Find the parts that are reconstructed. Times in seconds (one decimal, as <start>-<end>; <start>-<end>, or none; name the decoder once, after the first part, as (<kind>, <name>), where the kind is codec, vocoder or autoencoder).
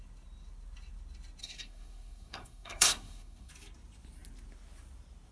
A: 1.4-3.5 (codec, SNAC)